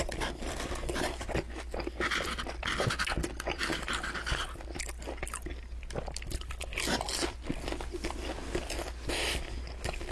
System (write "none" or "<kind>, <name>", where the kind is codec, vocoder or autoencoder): none